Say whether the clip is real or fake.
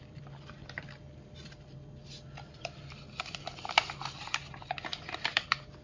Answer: fake